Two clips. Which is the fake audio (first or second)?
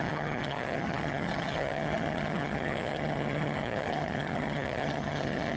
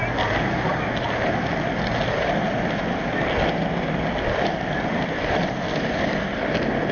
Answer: first